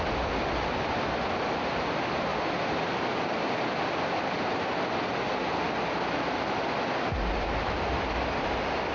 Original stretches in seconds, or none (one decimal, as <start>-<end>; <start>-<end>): 0.0-8.9